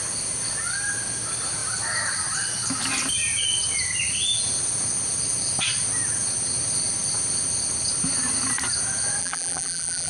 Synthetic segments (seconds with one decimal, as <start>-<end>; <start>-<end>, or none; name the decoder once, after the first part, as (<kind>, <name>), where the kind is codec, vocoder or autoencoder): 9.2-10.1 (vocoder, BigVGAN v2)